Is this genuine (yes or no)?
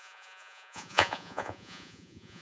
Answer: no